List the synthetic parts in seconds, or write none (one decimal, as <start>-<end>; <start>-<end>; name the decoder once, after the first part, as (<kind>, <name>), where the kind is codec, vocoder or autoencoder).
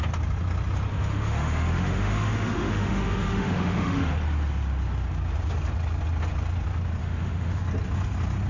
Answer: 0.9-4.1 (autoencoder, DAC-VAE); 7.0-7.6